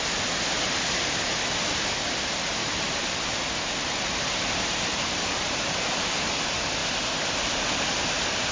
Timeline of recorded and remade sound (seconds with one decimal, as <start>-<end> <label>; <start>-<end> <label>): 0.0-2.6 recorded; 2.6-6.3 remade; 6.3-8.5 recorded